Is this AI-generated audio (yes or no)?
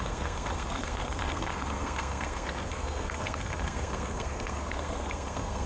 yes